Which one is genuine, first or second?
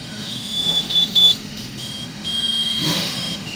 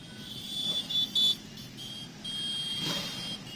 second